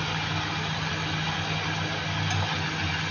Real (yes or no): yes